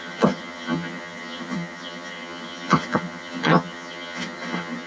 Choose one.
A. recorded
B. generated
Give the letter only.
B